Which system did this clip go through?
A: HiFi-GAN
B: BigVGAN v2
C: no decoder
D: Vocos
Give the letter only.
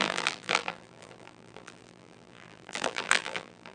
B